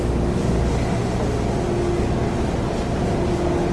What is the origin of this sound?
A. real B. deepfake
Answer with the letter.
A